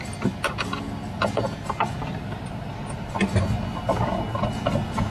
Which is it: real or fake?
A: real